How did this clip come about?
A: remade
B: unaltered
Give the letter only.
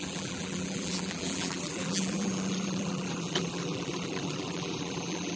A